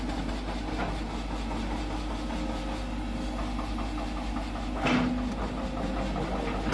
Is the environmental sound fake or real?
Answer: real